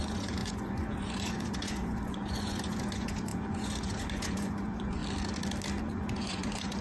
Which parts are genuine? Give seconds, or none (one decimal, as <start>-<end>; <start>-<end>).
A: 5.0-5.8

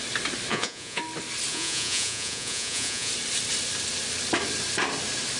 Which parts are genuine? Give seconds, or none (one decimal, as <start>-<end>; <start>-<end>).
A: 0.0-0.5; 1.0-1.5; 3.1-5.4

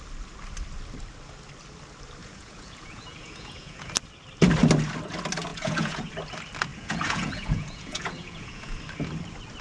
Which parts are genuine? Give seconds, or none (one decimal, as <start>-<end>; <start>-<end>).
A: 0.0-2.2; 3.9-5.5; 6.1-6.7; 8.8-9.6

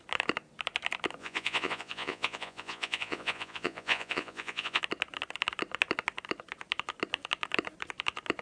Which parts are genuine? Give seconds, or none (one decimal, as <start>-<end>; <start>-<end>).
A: 0.0-1.2; 4.8-8.4

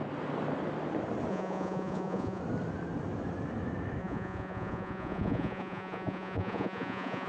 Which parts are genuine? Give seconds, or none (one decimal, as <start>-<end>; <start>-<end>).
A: 0.0-1.3; 2.4-4.0